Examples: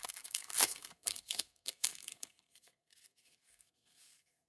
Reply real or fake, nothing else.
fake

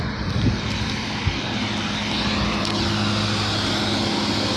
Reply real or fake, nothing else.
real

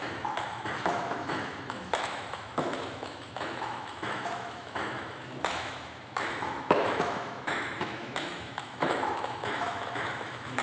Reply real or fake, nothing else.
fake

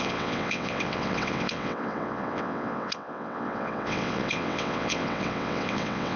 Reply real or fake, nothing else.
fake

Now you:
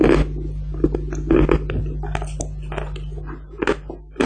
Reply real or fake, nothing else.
real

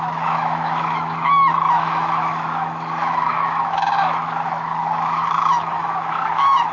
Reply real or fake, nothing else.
fake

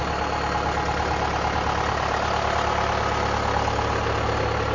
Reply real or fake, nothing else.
real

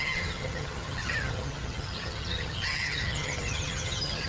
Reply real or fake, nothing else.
fake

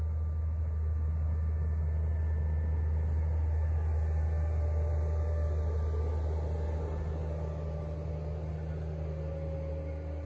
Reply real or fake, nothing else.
real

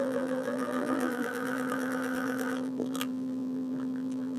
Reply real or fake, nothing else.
fake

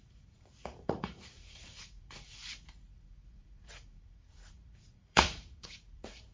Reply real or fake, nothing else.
fake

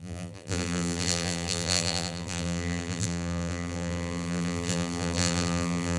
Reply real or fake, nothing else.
fake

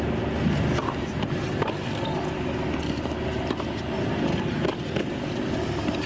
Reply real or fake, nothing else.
real